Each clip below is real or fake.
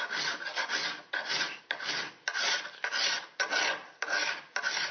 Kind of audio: real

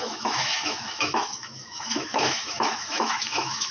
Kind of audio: fake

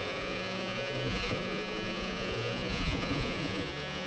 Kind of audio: fake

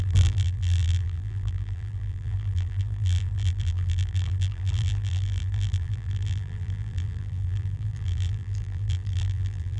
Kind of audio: fake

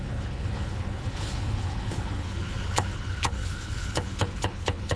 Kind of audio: fake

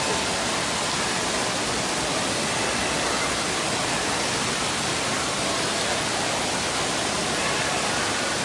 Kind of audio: real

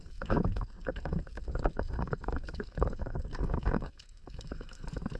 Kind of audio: fake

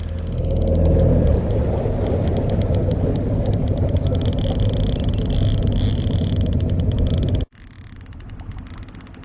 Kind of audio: real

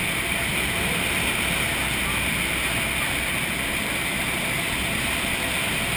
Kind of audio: real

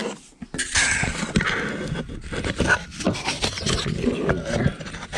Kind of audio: real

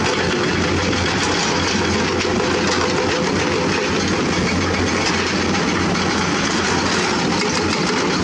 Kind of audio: real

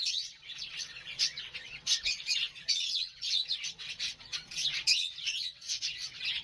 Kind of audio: fake